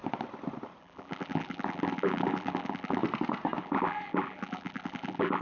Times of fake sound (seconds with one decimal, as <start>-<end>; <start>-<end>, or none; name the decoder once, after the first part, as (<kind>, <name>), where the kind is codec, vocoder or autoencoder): 0.8-3.0 (vocoder, BigVGAN v2); 3.6-5.4